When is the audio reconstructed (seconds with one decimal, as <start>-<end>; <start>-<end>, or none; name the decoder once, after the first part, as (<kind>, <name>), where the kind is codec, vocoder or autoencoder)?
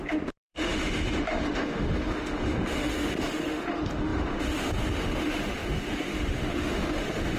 0.0-7.4 (autoencoder, DAC-VAE)